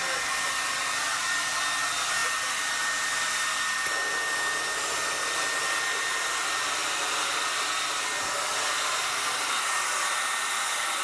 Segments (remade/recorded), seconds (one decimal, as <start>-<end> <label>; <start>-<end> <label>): 0.0-11.0 recorded